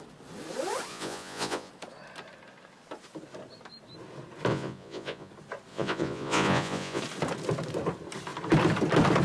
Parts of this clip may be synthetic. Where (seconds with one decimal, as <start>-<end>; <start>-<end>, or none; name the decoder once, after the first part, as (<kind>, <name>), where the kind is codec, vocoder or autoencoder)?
0.9-1.7 (vocoder, Vocos); 4.5-5.3; 5.7-7.0